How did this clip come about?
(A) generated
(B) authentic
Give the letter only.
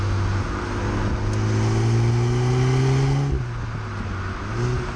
B